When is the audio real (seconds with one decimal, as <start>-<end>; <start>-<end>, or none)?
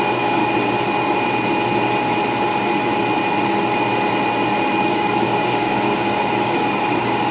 0.4-4.8